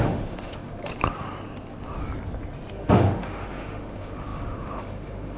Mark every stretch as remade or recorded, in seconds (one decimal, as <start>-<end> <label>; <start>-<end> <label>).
0.0-0.8 remade; 0.8-2.7 recorded; 2.7-5.4 remade